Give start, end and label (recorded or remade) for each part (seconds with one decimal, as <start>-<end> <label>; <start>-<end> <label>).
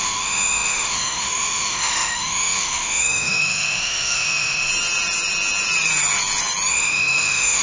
0.0-4.7 remade; 4.7-6.7 recorded; 6.7-7.6 remade